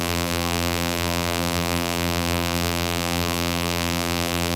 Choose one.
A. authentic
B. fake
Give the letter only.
B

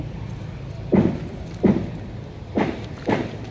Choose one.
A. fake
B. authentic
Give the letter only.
B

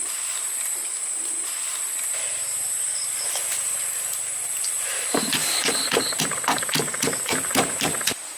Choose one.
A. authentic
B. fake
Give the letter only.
B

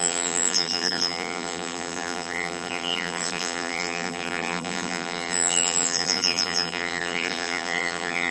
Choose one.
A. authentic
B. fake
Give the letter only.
B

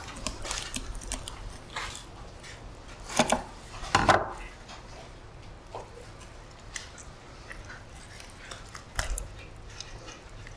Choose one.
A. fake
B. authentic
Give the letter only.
B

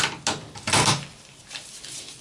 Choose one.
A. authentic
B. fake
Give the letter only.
A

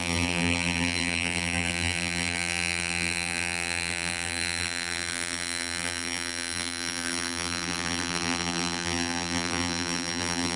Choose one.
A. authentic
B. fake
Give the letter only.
B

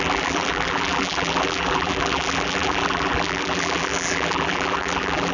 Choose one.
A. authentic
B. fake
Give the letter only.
B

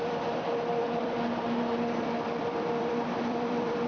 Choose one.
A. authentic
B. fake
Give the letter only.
B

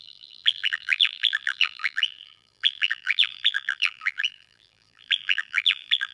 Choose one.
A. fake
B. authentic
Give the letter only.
A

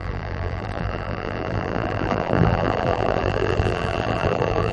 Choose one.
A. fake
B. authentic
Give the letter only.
A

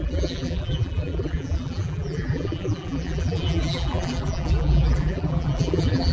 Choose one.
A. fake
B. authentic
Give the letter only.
A